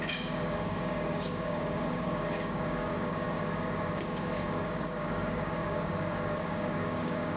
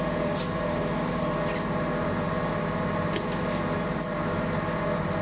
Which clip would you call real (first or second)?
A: second